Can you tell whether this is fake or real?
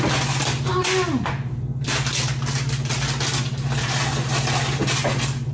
real